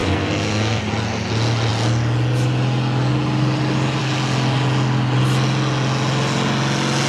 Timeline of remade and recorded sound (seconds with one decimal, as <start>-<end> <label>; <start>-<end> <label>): 0.0-0.8 remade; 0.8-7.1 recorded